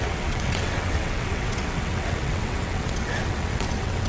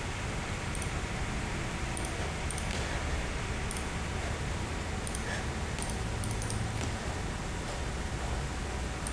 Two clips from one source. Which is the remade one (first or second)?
first